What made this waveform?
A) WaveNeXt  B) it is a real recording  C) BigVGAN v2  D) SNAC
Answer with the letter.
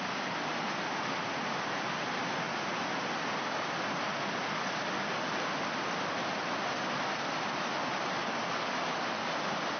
B